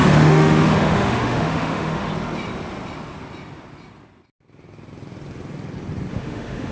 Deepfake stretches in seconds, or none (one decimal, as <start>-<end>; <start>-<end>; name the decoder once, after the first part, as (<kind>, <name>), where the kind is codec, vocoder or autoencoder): 0.0-2.1 (autoencoder, DAC-VAE); 6.1-6.7